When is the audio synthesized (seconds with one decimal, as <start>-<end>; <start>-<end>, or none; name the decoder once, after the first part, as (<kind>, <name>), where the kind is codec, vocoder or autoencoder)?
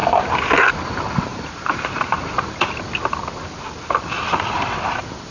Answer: 1.3-2.3 (vocoder, BigVGAN v2)